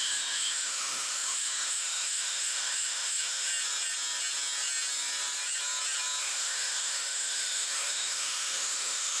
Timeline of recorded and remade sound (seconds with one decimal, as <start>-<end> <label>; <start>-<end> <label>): 0.0-3.5 remade; 3.5-6.2 recorded; 6.2-9.2 remade